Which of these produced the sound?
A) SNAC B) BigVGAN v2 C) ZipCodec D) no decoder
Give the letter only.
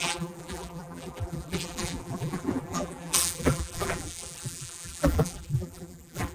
B